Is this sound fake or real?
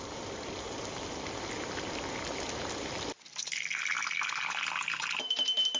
real